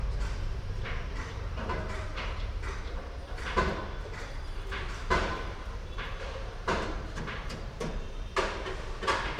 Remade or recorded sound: remade